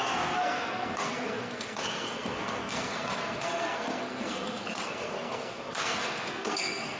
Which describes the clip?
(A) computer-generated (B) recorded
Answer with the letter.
A